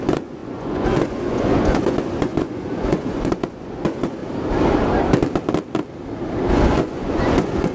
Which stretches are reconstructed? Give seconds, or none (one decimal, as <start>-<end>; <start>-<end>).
0.0-4.2; 6.5-7.7